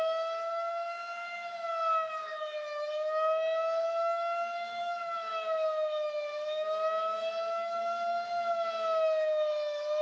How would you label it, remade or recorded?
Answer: remade